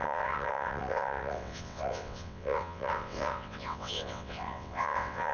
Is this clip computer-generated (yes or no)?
yes